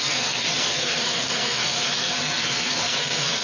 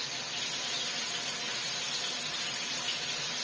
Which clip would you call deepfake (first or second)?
first